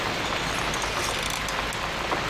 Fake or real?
real